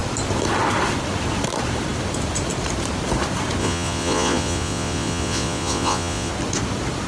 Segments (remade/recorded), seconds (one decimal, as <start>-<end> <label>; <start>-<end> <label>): 0.0-3.6 recorded; 3.6-6.3 remade; 6.3-7.1 recorded